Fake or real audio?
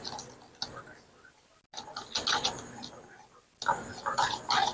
real